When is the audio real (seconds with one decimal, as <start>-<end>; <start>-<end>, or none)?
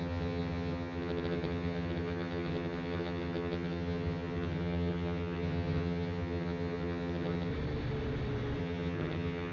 7.5-8.6